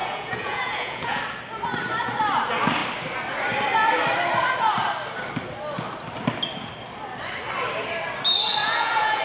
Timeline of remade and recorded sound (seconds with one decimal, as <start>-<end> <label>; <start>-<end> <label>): 0.0-1.2 remade; 1.2-8.6 recorded; 8.6-9.2 remade